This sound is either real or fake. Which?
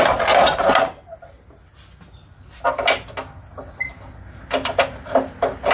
real